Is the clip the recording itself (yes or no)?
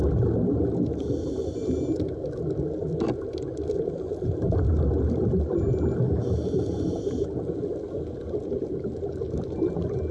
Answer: yes